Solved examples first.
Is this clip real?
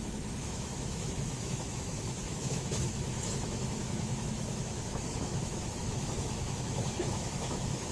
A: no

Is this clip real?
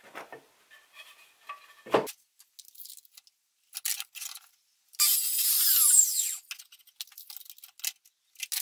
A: yes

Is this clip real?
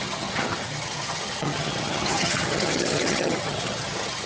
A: no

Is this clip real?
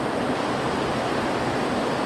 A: yes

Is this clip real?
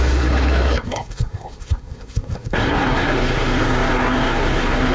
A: no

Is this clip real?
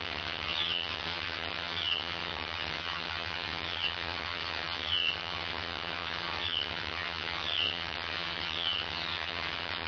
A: no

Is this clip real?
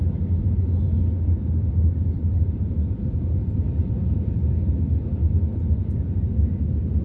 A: no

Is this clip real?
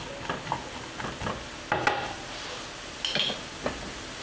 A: yes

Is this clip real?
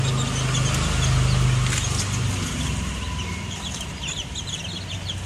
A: yes